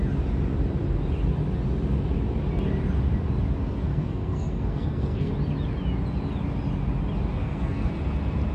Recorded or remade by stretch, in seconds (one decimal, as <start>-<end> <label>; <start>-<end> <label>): 0.0-3.6 recorded; 3.6-5.3 remade; 5.3-7.4 recorded; 7.4-7.9 remade; 7.9-8.5 recorded